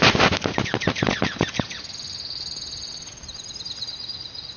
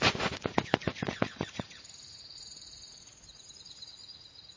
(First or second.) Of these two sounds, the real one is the first